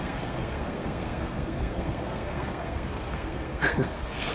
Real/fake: fake